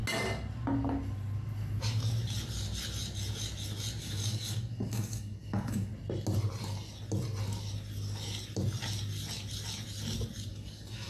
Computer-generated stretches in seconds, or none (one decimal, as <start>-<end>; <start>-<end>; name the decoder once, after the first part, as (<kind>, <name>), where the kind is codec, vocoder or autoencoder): 4.0-5.9 (codec, DAC); 10.5-11.1